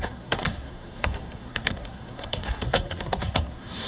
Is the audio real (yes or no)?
no